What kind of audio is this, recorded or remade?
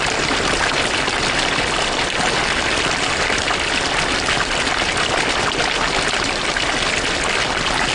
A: recorded